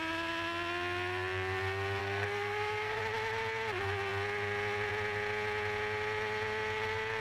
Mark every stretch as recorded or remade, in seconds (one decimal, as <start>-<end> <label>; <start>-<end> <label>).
0.0-2.0 recorded; 2.0-3.0 remade; 3.0-7.2 recorded